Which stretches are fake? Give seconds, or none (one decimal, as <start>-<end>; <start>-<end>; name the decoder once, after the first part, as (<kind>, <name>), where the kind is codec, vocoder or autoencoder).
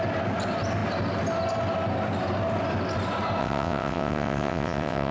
3.4-5.1 (vocoder, WaveNeXt)